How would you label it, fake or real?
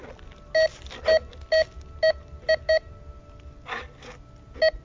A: real